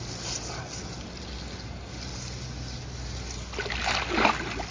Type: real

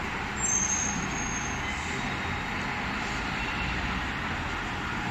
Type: real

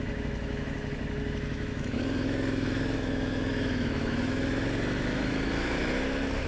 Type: fake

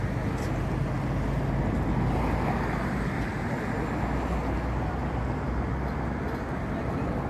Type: real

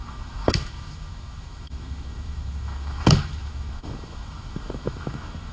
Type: fake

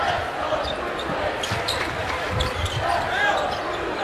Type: real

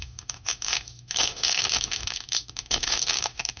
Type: fake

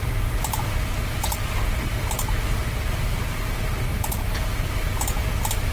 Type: real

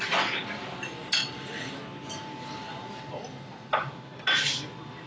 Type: real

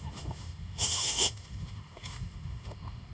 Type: fake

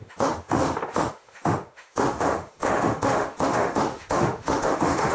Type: fake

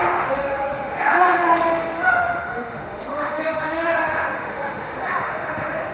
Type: fake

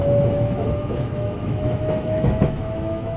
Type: fake